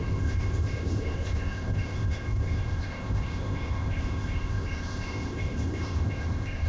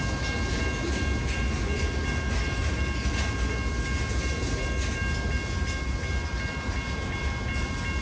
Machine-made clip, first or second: first